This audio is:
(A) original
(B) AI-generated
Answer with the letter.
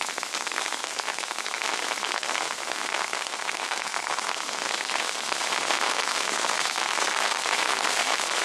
B